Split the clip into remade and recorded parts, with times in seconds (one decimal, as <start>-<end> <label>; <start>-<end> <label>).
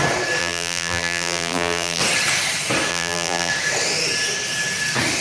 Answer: 0.0-0.4 recorded; 0.4-2.0 remade; 2.0-2.9 recorded; 2.9-3.5 remade; 3.5-5.2 recorded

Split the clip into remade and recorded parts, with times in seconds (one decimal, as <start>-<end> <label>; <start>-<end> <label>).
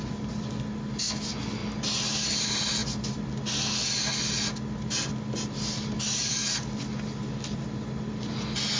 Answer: 0.0-8.8 recorded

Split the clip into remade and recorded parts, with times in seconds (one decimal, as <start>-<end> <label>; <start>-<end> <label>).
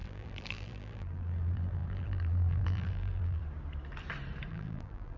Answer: 0.0-3.4 remade; 3.4-4.5 recorded; 4.5-5.2 remade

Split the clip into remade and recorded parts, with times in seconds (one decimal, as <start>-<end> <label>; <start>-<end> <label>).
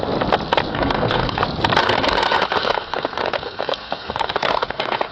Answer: 0.0-0.7 recorded; 0.7-1.4 remade; 1.4-1.8 recorded; 1.8-5.1 remade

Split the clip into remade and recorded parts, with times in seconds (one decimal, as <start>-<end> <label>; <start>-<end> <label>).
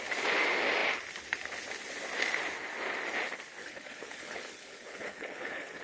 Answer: 0.0-3.6 recorded; 3.6-5.8 remade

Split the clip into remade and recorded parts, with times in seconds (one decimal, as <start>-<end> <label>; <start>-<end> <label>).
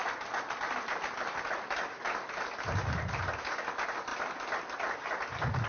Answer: 0.0-5.7 recorded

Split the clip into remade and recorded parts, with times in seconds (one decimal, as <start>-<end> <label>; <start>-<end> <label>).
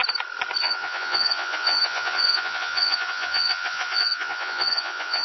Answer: 0.0-0.6 recorded; 0.6-5.2 remade